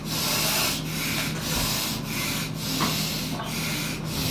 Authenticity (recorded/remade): recorded